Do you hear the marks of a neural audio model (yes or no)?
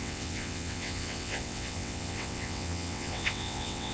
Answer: yes